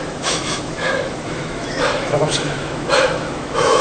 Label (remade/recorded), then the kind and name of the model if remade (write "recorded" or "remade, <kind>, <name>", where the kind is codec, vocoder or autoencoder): remade, autoencoder, DAC-VAE